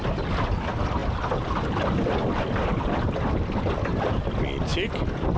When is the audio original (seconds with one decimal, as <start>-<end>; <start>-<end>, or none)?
0.0-5.4